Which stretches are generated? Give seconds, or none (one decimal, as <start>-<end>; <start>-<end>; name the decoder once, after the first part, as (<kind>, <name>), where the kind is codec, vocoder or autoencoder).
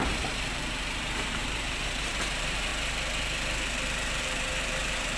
0.0-2.7 (vocoder, BigVGAN v2); 4.2-5.2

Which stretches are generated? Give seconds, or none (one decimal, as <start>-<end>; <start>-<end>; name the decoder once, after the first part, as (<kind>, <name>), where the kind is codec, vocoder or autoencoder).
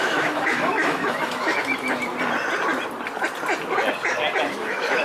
0.0-1.5 (autoencoder, DAC-VAE); 4.5-5.0